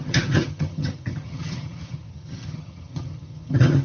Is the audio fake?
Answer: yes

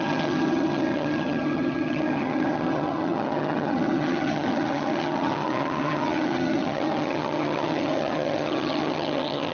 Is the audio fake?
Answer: yes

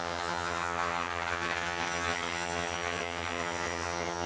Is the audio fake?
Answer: yes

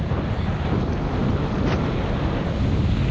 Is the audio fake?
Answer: no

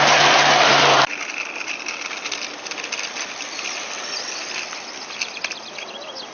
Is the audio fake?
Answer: no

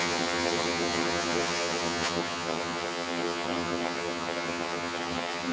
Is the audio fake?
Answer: yes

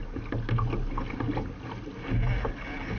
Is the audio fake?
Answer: no